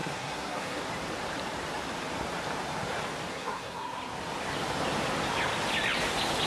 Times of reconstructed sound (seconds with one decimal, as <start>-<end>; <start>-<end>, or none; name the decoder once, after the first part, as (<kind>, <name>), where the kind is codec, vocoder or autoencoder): 0.0-0.8 (codec, SNAC); 3.3-4.0